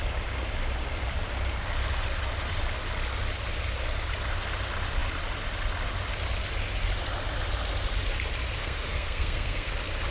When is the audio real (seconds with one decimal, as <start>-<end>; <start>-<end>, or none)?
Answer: 0.0-8.6; 9.7-10.1